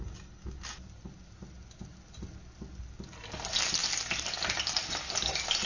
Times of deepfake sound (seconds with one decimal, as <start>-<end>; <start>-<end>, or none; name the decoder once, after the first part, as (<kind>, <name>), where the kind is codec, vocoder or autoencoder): none